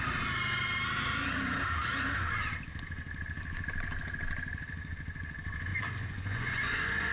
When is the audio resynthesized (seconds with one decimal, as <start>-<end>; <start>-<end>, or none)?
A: 5.7-7.1